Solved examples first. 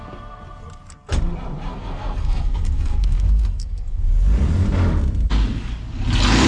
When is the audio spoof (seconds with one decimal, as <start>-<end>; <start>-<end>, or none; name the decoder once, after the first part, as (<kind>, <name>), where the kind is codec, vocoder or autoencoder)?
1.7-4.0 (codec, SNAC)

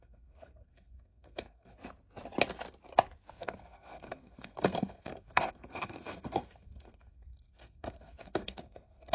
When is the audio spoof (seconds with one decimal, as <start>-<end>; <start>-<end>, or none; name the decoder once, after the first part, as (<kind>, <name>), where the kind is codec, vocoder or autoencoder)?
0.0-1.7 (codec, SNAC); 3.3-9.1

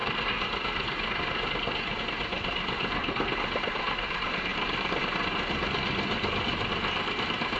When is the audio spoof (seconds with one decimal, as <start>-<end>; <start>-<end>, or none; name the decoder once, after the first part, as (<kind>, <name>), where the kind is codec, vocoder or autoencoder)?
none

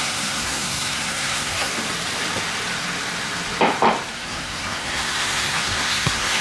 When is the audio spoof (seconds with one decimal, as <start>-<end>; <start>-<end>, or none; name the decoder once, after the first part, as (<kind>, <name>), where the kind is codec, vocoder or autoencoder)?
0.0-1.7 (codec, SNAC); 4.1-6.4

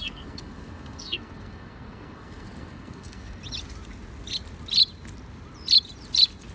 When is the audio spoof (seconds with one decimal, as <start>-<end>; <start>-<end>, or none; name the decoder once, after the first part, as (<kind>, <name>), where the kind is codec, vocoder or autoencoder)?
0.0-3.4 (codec, SNAC)

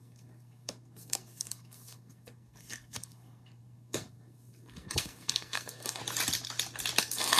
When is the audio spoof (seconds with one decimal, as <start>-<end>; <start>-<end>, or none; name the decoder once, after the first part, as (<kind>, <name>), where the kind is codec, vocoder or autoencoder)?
0.0-6.0 (codec, SNAC); 7.0-7.4

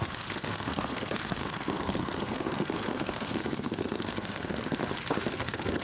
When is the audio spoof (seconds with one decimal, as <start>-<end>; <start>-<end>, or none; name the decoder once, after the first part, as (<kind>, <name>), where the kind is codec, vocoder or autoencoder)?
0.0-4.8 (codec, SNAC); 5.3-5.8